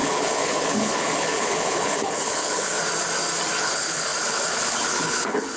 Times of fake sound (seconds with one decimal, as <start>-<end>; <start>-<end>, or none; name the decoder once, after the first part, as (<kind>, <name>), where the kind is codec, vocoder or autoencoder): 0.0-2.8 (codec, HILCodec); 3.6-5.6